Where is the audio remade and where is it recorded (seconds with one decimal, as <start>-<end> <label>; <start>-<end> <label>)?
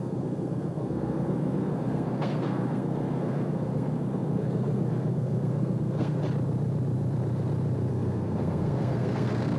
0.0-6.2 remade; 6.2-7.9 recorded; 7.9-9.6 remade